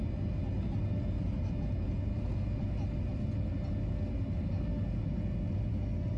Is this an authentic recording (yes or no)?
yes